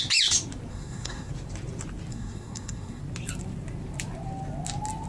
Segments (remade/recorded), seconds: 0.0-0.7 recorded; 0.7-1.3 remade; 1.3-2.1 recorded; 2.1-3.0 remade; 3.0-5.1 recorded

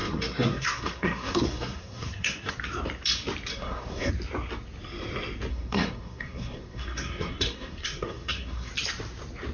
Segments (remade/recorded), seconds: 0.0-2.5 remade; 2.5-3.5 recorded; 3.5-4.1 remade; 4.1-5.5 recorded; 5.5-8.7 remade; 8.7-9.5 recorded

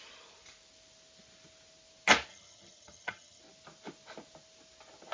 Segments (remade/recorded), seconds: 0.0-2.3 recorded; 2.3-3.4 remade; 3.4-5.1 recorded

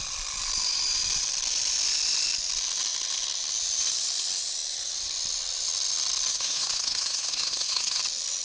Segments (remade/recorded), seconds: 0.0-6.3 recorded; 6.3-8.0 remade; 8.0-8.4 recorded